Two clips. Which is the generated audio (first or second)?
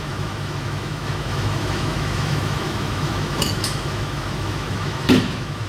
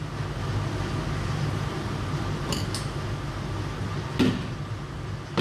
first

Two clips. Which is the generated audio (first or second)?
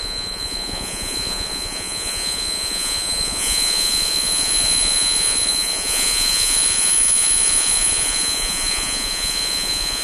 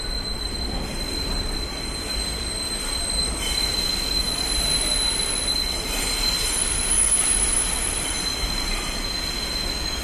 first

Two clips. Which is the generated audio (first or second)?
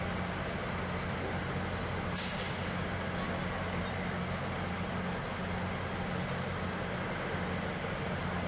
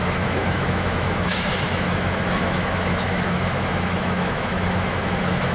second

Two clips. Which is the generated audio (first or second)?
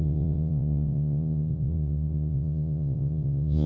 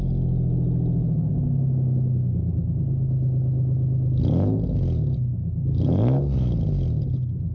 first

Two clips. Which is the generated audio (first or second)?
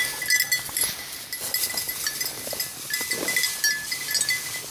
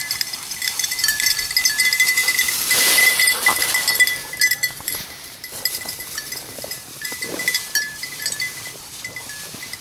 second